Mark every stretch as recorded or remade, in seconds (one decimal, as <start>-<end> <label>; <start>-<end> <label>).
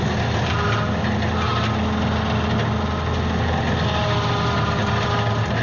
0.0-5.6 recorded